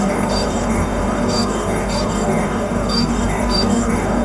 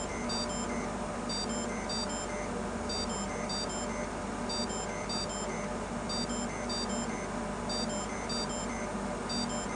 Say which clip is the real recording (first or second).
second